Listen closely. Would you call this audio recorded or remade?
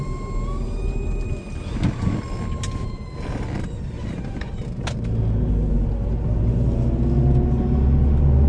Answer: recorded